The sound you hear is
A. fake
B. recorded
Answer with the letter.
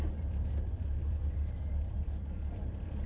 A